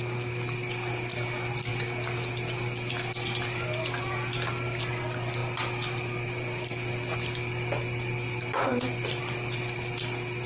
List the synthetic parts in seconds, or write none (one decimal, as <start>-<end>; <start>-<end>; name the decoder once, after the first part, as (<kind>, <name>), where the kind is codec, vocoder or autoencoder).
none